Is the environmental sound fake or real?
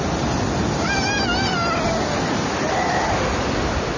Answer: real